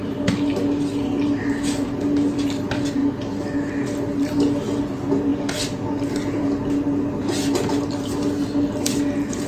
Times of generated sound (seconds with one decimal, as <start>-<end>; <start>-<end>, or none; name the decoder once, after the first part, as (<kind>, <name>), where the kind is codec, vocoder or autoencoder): none

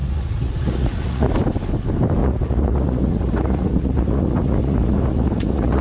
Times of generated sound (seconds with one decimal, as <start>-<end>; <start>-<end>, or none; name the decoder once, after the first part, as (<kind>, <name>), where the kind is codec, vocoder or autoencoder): 0.0-1.3 (vocoder, Vocos); 2.2-5.8

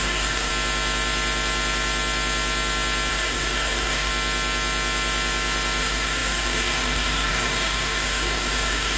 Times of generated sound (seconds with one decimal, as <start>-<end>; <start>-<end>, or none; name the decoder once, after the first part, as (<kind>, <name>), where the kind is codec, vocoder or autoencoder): 0.0-0.5 (codec, DAC); 3.1-4.1; 5.8-9.0

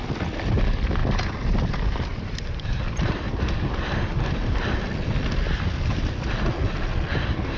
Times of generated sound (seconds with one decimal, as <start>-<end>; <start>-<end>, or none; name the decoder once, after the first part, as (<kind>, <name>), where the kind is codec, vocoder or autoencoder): none

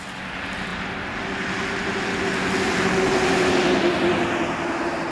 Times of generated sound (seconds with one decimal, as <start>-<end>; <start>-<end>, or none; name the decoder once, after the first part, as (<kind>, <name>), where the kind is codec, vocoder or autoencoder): none

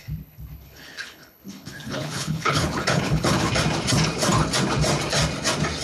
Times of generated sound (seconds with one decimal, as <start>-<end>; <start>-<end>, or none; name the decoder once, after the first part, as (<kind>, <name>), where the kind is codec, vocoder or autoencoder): 0.0-3.5 (codec, HILCodec)

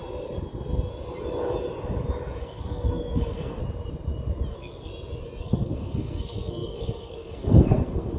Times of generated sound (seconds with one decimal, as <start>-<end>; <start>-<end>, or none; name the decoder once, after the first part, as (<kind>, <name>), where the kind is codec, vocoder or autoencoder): 2.4-3.6 (codec, SNAC); 4.5-4.9; 5.4-8.2

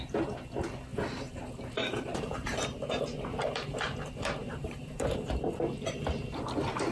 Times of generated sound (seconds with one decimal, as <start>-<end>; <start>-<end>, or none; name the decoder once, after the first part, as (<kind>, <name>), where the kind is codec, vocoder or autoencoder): 0.9-2.6 (vocoder, BigVGAN v2); 4.5-5.4